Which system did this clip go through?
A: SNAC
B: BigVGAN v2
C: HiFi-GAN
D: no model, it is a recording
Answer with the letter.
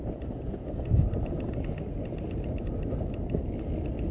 D